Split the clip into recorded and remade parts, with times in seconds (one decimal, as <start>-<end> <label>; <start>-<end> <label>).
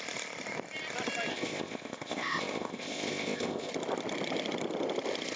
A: 0.0-1.3 recorded; 1.3-3.7 remade; 3.7-5.4 recorded